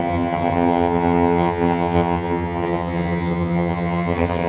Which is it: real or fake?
fake